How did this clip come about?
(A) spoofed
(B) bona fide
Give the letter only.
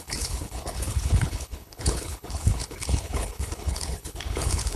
A